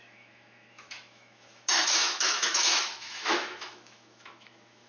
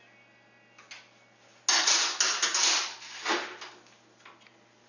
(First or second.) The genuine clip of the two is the second